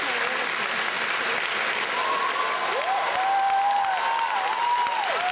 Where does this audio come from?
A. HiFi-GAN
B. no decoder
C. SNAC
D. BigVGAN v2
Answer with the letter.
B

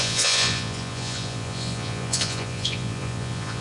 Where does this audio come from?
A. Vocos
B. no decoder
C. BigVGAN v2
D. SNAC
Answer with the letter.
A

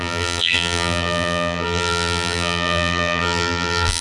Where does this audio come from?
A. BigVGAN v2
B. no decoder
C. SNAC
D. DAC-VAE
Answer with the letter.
A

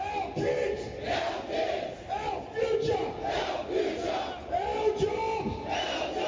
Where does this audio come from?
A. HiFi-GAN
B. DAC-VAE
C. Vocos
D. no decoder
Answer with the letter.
D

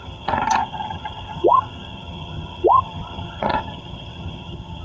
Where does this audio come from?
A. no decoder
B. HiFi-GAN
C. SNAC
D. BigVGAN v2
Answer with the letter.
B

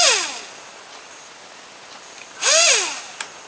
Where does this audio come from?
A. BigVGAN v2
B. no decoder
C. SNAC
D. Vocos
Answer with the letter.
B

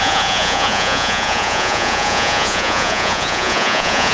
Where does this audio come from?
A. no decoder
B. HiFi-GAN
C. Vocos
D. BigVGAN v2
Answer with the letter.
C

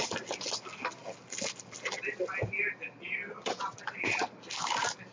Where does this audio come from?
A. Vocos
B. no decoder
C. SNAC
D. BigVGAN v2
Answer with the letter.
B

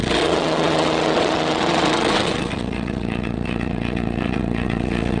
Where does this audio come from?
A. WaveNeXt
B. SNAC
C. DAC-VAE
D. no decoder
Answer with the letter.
A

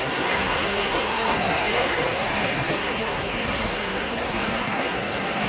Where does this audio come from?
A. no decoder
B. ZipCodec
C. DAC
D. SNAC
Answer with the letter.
D